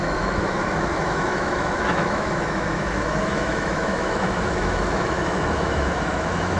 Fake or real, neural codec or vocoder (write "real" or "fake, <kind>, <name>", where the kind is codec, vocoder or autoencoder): fake, autoencoder, DAC-VAE